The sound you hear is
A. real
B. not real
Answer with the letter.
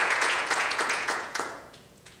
B